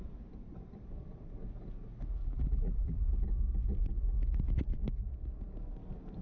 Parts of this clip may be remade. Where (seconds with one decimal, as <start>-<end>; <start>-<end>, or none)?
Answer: 2.2-3.0